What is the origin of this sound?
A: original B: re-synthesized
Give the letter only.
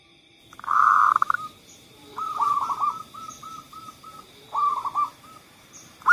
B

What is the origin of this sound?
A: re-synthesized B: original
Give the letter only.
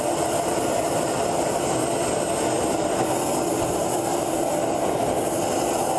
B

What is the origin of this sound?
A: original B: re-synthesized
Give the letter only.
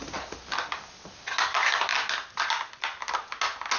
A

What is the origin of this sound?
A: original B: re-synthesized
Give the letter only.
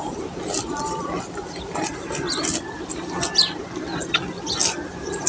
A